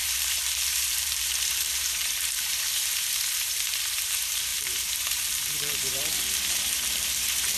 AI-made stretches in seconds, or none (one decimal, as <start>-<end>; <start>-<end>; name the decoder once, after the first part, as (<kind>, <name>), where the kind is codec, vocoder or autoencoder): 0.0-7.6 (vocoder, BigVGAN v2)